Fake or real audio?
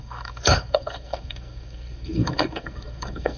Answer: fake